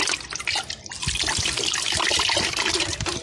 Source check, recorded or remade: recorded